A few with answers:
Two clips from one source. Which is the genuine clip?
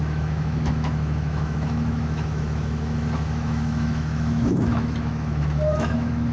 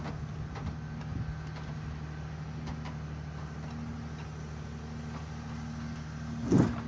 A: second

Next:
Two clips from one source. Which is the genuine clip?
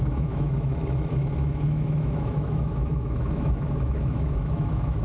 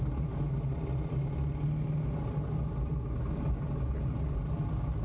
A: second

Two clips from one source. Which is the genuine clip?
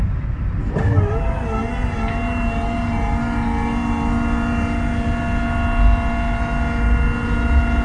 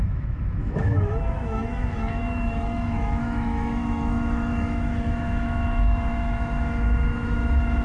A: first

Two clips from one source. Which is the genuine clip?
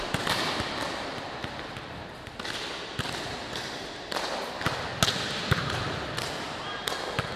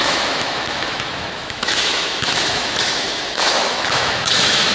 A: first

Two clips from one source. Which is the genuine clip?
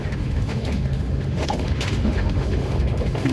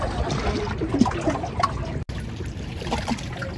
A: second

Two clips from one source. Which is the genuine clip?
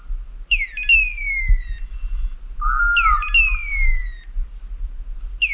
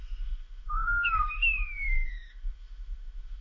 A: first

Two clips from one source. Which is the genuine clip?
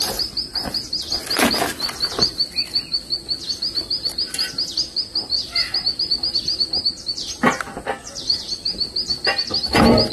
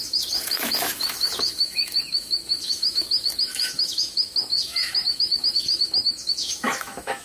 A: first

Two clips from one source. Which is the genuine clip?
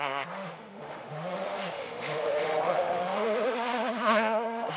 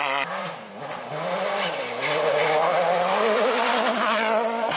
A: second